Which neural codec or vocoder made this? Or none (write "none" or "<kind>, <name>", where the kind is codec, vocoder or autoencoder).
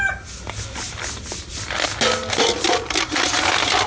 none